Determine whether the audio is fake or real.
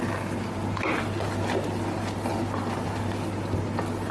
real